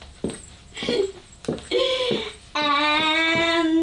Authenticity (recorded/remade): recorded